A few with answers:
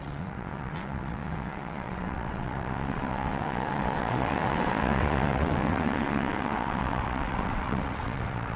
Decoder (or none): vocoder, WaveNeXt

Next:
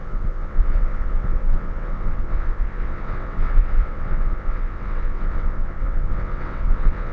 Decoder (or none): vocoder, WaveNeXt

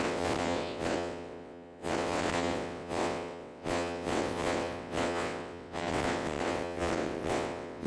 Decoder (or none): vocoder, WaveNeXt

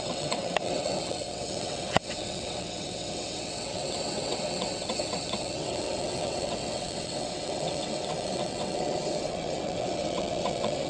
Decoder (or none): vocoder, WaveNeXt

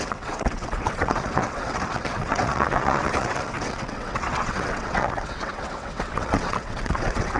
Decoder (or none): vocoder, WaveNeXt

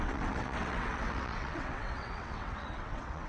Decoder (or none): vocoder, WaveNeXt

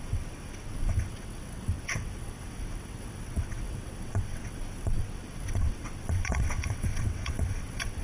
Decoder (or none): vocoder, WaveNeXt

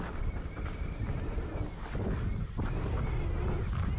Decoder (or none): none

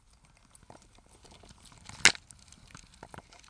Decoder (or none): none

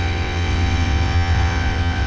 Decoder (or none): vocoder, WaveNeXt